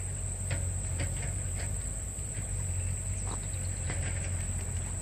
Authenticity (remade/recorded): recorded